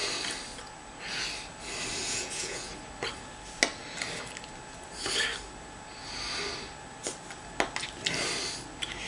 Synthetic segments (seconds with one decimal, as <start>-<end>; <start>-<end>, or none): 2.0-2.7